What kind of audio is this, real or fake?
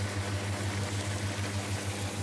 real